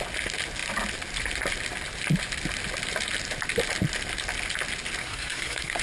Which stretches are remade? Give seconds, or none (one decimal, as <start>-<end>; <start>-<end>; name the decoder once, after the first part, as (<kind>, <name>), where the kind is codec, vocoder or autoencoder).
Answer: 5.0-5.8 (codec, SNAC)